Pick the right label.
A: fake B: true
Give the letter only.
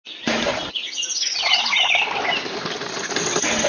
B